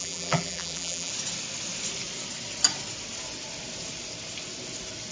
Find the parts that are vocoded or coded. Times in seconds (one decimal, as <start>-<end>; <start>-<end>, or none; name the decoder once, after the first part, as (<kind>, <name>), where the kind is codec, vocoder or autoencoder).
0.0-1.1 (vocoder, BigVGAN v2)